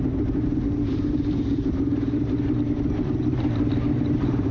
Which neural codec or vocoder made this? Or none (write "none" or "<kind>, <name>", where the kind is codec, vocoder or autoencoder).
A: vocoder, BigVGAN v2